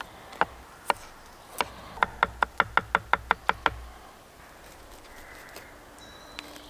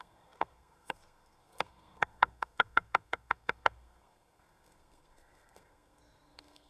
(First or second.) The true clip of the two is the first